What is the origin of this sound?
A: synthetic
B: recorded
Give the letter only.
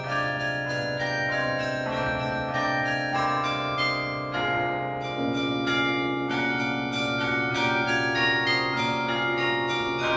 B